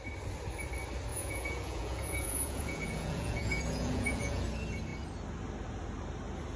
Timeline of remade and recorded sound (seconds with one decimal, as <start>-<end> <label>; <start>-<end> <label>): 0.0-1.1 recorded; 1.1-4.4 remade; 4.4-6.6 recorded

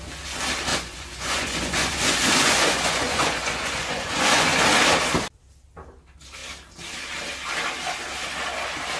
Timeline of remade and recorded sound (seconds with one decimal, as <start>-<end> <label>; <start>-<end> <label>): 0.0-0.7 recorded; 0.7-4.6 remade; 4.6-9.0 recorded